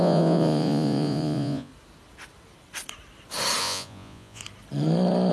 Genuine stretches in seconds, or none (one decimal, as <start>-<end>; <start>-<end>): 1.7-3.6; 4.4-5.3